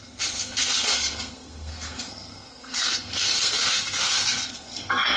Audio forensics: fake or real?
fake